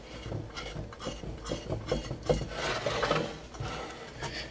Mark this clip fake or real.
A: real